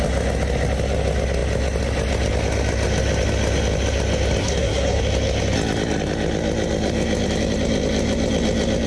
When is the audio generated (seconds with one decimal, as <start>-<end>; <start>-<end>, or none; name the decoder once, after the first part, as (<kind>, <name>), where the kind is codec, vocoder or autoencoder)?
4.4-5.0 (codec, SNAC)